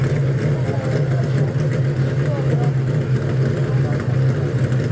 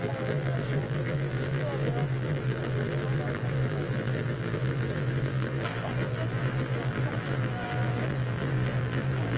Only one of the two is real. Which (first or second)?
first